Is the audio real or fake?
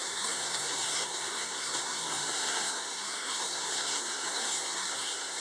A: fake